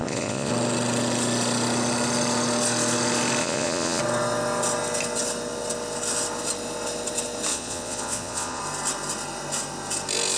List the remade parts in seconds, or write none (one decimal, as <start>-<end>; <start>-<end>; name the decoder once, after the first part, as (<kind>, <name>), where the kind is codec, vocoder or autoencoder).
0.0-0.5 (vocoder, Vocos); 3.4-4.0; 7.5-8.6